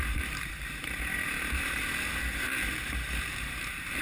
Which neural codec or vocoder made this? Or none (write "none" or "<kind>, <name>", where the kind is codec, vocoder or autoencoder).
vocoder, BigVGAN v2